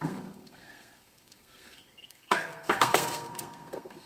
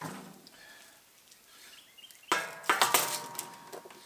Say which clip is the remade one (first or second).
first